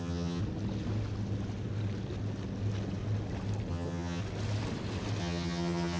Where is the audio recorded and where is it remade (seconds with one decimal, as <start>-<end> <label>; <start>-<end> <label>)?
0.0-0.4 remade; 0.4-3.7 recorded; 3.7-4.2 remade; 4.2-5.2 recorded; 5.2-6.0 remade